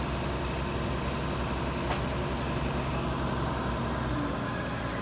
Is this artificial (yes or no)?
no